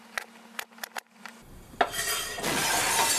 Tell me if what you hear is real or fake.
real